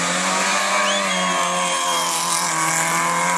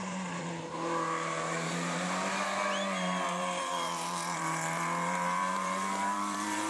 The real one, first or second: first